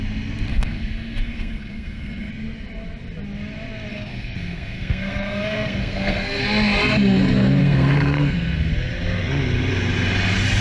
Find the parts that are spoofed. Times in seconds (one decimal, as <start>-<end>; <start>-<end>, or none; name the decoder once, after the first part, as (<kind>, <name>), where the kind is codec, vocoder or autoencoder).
0.5-2.3 (codec, SNAC); 3.9-6.4; 7.6-8.7